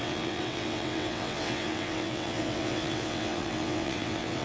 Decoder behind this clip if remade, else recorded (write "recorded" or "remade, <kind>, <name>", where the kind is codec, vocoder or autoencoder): remade, vocoder, WaveNeXt